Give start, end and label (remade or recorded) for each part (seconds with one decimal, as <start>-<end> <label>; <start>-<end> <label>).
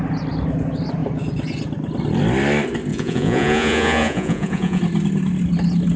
0.0-2.9 recorded; 2.9-4.8 remade; 4.8-6.0 recorded